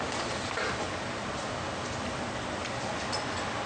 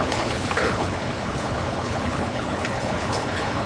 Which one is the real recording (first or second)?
first